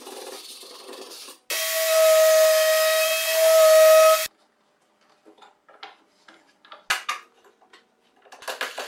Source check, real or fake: real